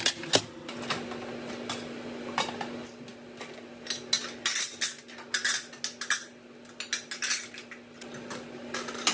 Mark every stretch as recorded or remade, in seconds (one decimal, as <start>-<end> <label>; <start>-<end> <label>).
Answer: 0.0-9.1 recorded